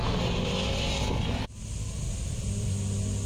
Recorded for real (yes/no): yes